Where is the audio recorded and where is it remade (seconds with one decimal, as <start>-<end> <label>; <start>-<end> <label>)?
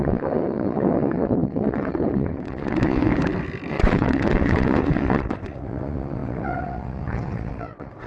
0.0-3.1 remade; 3.1-3.7 recorded; 3.7-8.1 remade